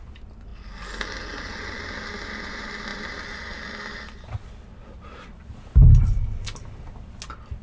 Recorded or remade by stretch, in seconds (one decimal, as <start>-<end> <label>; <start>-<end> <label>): 0.0-7.6 recorded